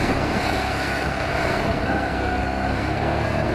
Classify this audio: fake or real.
fake